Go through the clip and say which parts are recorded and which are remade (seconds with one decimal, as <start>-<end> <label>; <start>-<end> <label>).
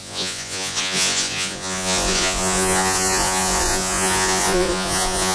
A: 0.0-5.3 remade